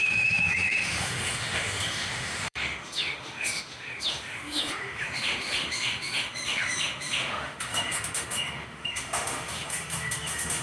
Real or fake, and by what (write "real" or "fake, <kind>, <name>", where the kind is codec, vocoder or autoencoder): fake, autoencoder, DAC-VAE